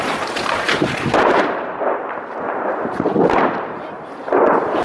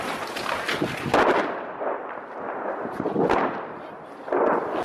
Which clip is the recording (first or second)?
second